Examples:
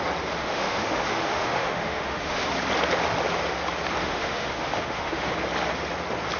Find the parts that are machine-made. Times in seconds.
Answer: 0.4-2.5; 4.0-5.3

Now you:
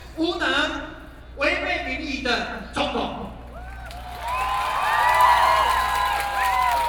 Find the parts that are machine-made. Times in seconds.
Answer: none

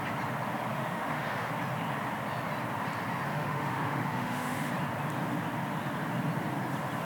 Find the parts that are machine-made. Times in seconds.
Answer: 0.7-1.5; 3.3-4.7